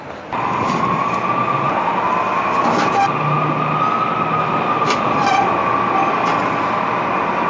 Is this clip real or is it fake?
real